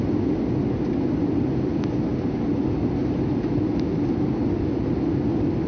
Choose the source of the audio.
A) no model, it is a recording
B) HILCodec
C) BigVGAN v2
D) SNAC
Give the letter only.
A